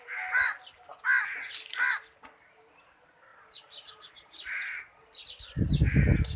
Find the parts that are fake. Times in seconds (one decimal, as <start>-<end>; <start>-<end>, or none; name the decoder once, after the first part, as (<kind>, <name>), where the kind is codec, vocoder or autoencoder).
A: 3.3-5.7 (vocoder, BigVGAN v2)